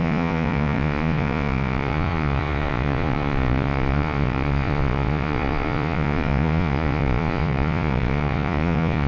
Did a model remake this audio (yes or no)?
yes